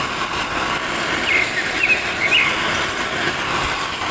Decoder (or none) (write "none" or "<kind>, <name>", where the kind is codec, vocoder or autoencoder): none